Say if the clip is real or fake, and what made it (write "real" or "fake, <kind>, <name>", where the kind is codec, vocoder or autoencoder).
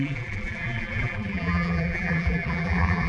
fake, vocoder, BigVGAN v2